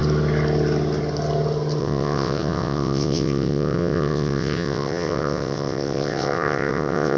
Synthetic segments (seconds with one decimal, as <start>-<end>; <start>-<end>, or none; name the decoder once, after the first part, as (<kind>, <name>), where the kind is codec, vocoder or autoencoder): 1.8-7.2 (vocoder, WaveNeXt)